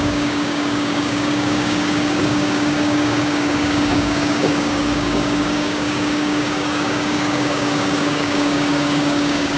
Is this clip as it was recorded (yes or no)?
no